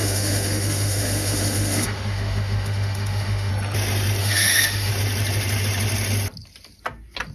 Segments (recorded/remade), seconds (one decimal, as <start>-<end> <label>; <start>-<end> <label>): 0.0-3.5 remade; 3.5-4.2 recorded; 4.2-4.9 remade; 4.9-7.3 recorded